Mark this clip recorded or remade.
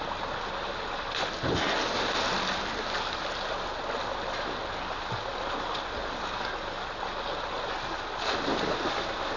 recorded